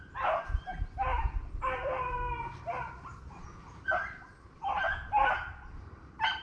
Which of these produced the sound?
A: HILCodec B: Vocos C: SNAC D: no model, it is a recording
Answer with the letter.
D